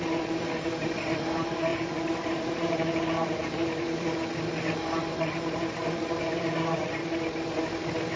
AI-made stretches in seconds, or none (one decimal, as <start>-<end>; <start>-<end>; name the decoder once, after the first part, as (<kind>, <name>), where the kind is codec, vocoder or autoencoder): 0.0-7.0 (vocoder, BigVGAN v2)

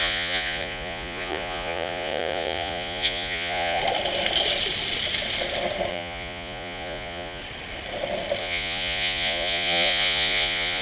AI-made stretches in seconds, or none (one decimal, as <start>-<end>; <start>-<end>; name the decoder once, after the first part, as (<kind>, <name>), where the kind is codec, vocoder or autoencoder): 0.0-3.8 (vocoder, Vocos); 5.9-7.4; 8.4-10.8

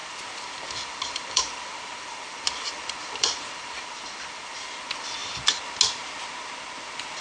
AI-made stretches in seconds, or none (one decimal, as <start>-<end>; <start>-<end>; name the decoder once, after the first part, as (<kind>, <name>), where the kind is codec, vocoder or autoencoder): 0.0-5.2 (vocoder, BigVGAN v2)

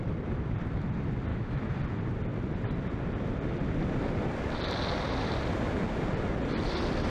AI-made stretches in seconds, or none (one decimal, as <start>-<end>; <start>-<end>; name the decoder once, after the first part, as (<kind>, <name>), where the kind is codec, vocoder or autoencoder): 1.3-1.8 (autoencoder, DAC-VAE)

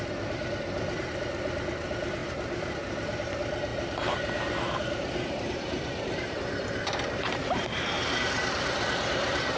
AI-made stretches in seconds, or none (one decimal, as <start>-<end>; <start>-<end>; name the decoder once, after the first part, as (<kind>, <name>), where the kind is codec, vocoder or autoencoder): 2.2-3.3 (vocoder, BigVGAN v2); 3.7-7.4

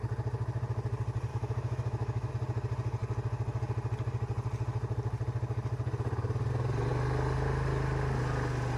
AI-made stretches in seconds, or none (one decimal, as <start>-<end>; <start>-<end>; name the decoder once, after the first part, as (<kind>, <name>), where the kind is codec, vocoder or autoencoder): 1.3-2.3 (autoencoder, DAC-VAE)

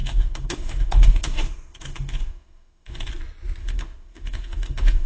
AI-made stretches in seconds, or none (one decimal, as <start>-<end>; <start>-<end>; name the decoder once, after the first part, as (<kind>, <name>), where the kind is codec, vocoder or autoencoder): 0.0-3.1 (autoencoder, DAC-VAE); 3.6-5.1